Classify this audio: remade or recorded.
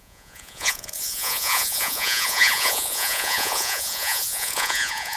remade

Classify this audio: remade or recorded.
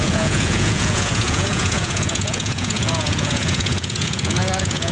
remade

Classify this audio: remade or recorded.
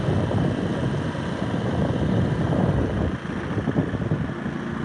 recorded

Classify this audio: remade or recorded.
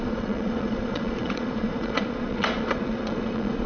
remade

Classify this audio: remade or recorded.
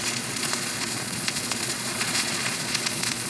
remade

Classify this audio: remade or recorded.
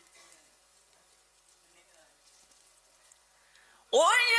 remade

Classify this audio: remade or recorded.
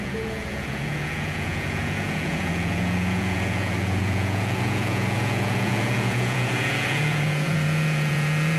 remade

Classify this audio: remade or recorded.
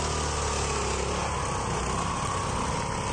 recorded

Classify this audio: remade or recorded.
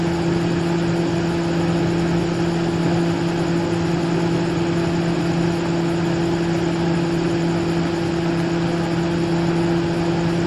recorded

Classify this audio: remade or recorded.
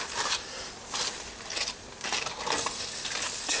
recorded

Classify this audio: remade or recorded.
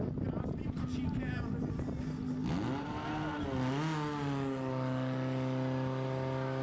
recorded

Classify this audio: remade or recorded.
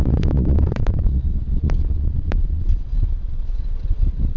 remade